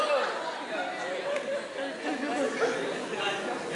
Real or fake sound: real